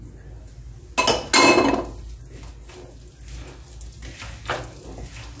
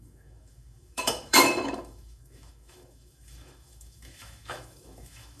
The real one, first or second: first